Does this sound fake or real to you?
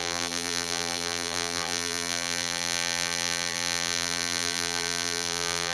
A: fake